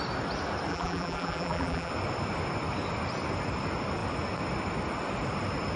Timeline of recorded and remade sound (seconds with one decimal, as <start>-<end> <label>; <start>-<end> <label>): 0.0-0.7 recorded; 0.7-1.9 remade; 1.9-5.8 recorded